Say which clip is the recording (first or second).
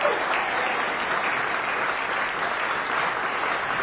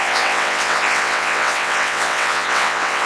first